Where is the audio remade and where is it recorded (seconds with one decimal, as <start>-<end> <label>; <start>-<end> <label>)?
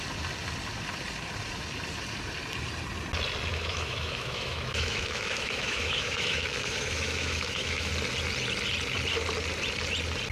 0.0-3.5 recorded; 3.5-7.9 remade; 7.9-10.3 recorded